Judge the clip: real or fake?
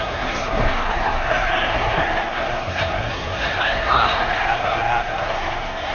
fake